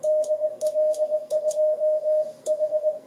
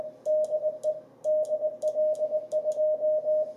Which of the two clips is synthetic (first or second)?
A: first